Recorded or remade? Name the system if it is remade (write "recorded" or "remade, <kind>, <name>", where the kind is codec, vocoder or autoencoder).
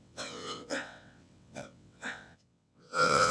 remade, vocoder, WaveNeXt